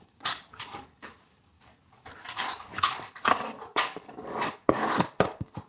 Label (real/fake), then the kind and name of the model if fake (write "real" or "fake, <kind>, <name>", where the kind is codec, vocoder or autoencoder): fake, codec, DAC